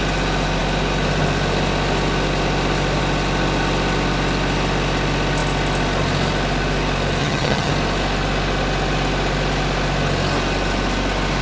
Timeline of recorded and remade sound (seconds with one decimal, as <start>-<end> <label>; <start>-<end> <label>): 0.0-7.2 recorded; 7.2-7.7 remade; 7.7-11.4 recorded